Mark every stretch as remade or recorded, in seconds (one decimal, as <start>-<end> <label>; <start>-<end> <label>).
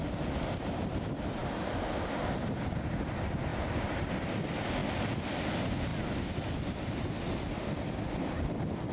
0.0-3.5 recorded; 3.5-4.1 remade; 4.1-8.9 recorded